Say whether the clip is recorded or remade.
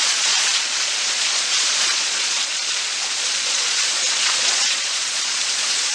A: remade